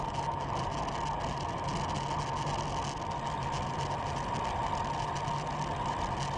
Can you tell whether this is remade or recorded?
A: recorded